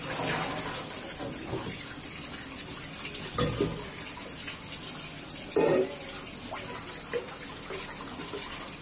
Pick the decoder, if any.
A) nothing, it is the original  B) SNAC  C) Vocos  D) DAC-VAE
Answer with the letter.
A